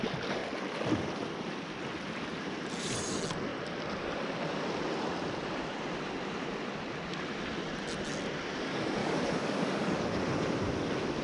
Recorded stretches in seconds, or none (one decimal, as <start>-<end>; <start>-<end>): 0.0-9.0; 10.0-11.2